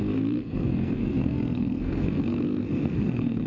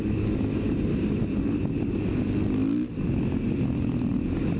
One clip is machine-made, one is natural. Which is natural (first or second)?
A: second